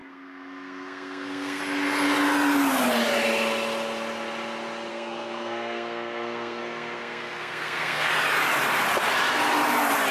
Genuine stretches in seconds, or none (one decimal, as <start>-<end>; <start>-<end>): 1.6-4.9; 8.1-10.1